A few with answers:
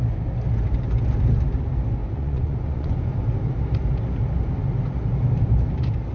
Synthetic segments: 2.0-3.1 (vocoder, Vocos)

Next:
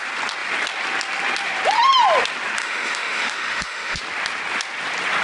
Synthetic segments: 2.6-4.0 (autoencoder, DAC-VAE)